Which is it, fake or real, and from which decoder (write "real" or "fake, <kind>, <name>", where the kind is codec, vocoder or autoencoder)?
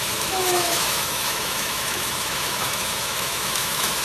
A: fake, autoencoder, DAC-VAE